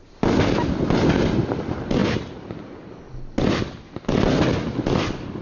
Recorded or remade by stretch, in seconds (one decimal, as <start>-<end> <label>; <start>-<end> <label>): 0.0-5.4 recorded